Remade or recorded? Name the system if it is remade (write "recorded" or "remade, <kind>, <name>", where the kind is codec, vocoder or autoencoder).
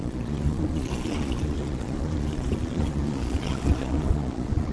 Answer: remade, vocoder, Vocos